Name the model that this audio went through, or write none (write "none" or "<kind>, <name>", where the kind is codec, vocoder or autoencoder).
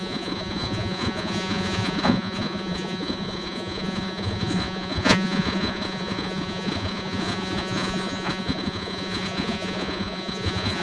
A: vocoder, Vocos